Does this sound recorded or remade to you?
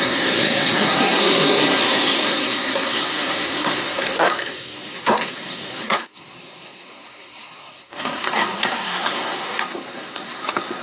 remade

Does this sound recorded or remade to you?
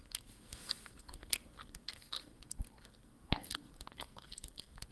remade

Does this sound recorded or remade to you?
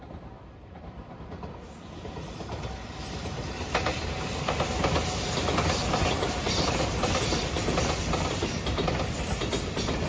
recorded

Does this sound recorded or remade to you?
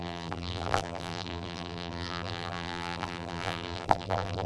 remade